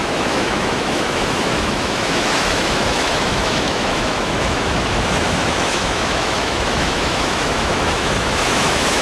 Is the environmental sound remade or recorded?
remade